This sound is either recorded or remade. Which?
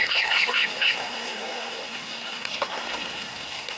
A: remade